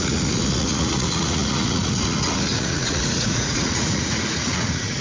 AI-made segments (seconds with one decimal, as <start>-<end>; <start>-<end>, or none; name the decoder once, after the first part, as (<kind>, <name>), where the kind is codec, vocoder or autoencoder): 0.0-5.0 (vocoder, Vocos)